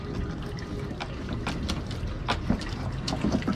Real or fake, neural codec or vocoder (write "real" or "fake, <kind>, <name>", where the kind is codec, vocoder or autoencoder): real